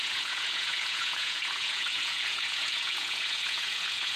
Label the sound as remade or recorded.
remade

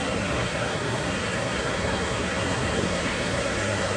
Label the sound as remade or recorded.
remade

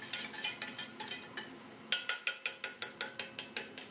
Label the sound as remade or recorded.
recorded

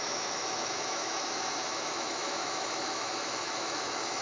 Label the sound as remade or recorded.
remade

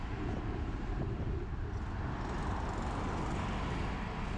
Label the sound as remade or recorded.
recorded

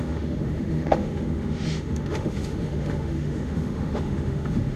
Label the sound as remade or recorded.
remade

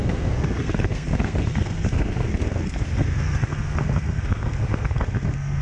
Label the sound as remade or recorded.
remade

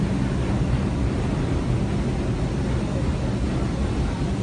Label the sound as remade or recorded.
recorded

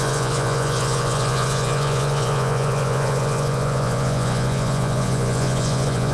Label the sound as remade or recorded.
remade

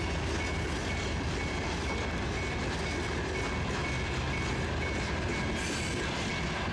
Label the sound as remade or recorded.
recorded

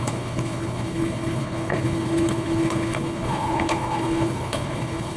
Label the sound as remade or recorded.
remade